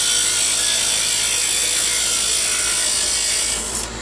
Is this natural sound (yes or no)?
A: yes